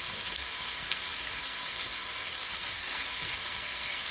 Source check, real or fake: fake